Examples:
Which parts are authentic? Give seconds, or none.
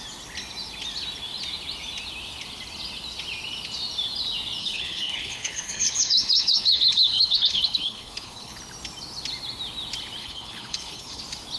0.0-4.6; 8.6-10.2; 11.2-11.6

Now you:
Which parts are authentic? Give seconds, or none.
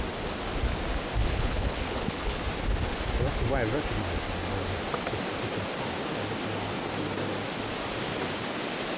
0.0-1.2; 2.4-9.0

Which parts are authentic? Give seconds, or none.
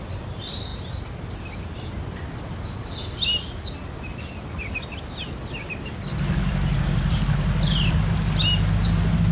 0.0-9.3